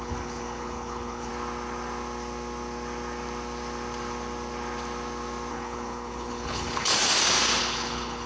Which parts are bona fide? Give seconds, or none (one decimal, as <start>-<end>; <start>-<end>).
1.3-5.5; 6.9-7.6